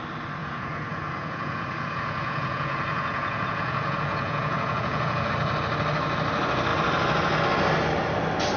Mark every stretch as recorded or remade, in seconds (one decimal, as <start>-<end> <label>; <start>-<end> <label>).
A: 0.0-0.4 recorded; 0.4-5.3 remade; 5.3-8.6 recorded